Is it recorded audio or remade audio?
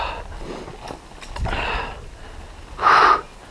recorded